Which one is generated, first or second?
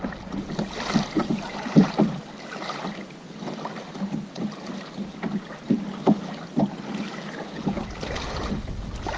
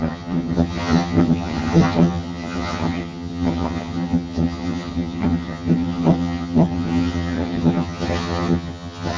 second